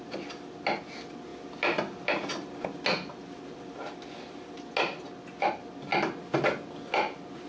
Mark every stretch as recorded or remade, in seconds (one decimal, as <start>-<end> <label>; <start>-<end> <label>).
0.0-7.5 recorded

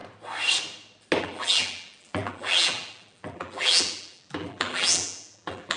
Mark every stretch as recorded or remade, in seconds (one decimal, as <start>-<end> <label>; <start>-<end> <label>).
0.0-1.2 recorded; 1.2-5.8 remade